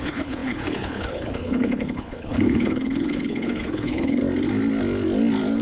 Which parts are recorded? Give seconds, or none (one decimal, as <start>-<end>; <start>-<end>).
4.2-5.6